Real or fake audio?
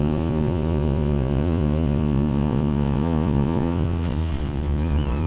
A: fake